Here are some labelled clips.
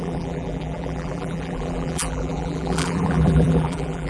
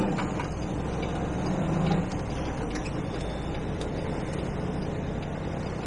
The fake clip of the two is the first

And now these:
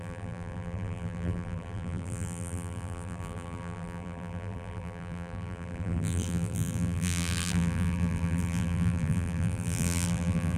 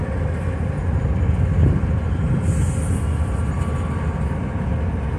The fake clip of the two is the first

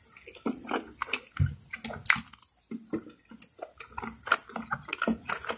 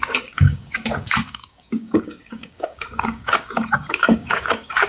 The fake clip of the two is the second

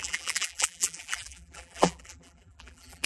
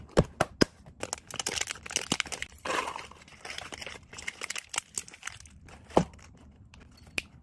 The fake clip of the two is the first